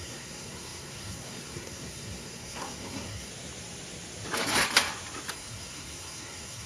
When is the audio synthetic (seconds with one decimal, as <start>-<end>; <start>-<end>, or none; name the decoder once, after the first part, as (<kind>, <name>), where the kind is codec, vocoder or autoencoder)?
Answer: 0.0-3.3 (codec, SNAC); 5.3-6.7